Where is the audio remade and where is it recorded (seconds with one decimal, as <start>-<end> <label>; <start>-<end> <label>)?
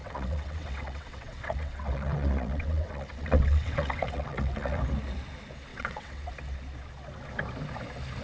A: 0.0-4.8 remade; 4.8-5.7 recorded; 5.7-6.3 remade; 6.3-8.2 recorded